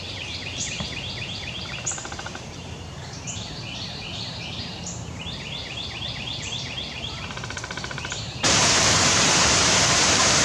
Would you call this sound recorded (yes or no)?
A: no